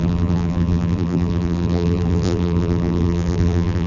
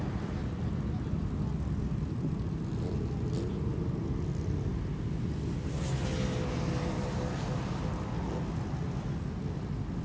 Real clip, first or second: second